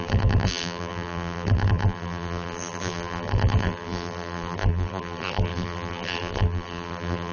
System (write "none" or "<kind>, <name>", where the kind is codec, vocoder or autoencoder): vocoder, BigVGAN v2